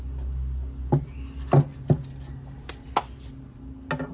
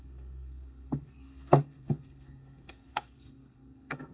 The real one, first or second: first